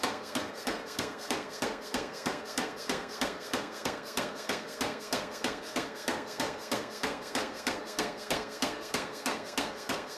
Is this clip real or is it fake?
fake